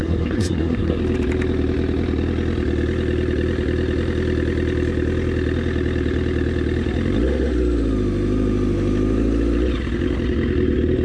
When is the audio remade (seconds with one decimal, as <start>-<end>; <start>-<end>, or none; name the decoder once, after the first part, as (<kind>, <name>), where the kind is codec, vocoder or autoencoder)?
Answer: 0.0-1.0 (codec, SNAC)